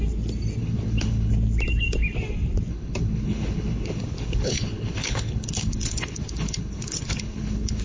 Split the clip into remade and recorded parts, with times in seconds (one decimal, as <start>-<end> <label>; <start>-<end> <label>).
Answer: 0.0-0.6 recorded; 0.6-1.3 remade; 1.3-2.7 recorded; 2.7-7.8 remade